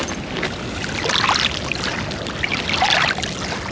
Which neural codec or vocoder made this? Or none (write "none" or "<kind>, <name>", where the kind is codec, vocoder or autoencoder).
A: none